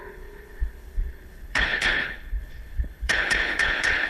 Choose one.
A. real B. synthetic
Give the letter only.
B